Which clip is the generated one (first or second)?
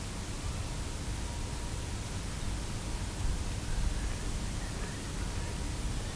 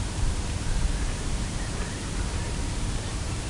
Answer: second